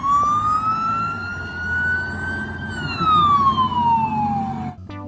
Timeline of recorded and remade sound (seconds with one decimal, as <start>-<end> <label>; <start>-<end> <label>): 0.0-5.1 recorded